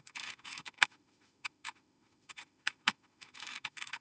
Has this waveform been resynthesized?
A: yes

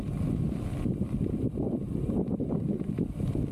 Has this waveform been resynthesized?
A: no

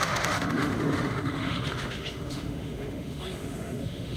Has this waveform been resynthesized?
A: yes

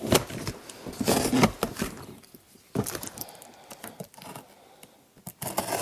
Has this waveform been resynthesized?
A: no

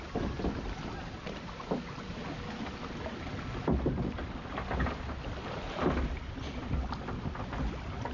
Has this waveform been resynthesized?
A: no